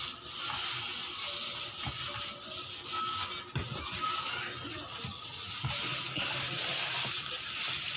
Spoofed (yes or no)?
no